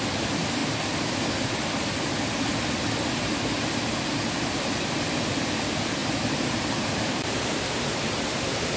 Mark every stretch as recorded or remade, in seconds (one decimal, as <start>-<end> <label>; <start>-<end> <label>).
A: 0.0-0.6 remade; 0.6-4.4 recorded; 4.4-8.8 remade

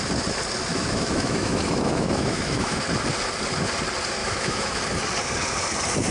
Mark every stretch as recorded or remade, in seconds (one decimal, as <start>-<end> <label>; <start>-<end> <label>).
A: 0.0-0.7 recorded; 0.7-2.8 remade; 2.8-4.2 recorded; 4.2-4.8 remade; 4.8-6.1 recorded

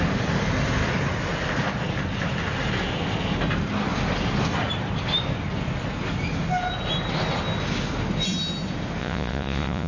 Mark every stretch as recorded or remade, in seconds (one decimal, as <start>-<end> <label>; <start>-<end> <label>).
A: 0.0-9.0 recorded; 9.0-9.9 remade

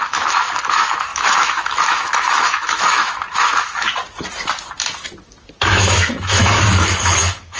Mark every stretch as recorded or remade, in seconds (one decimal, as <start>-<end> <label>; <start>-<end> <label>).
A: 0.0-3.9 remade; 3.9-5.6 recorded; 5.6-7.6 remade

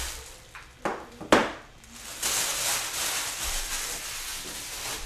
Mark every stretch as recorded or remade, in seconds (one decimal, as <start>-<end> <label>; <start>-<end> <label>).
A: 0.0-5.1 recorded